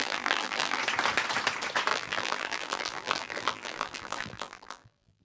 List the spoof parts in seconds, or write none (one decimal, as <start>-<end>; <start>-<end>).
0.0-0.8; 1.9-5.2